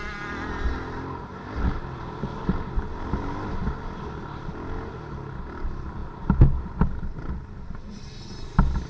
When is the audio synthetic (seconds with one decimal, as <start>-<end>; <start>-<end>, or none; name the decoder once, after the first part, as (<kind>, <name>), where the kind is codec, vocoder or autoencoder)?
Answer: none